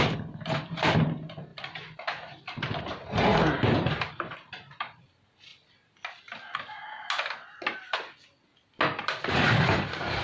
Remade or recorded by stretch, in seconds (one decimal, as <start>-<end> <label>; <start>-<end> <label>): 0.0-1.5 remade; 1.5-2.8 recorded; 2.8-5.5 remade; 5.5-9.0 recorded; 9.0-10.2 remade

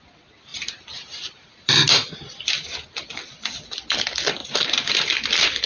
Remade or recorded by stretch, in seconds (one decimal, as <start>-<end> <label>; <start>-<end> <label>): 0.0-0.5 recorded; 0.5-2.5 remade; 2.5-4.4 recorded; 4.4-5.7 remade